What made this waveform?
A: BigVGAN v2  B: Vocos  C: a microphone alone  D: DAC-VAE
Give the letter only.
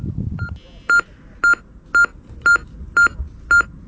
C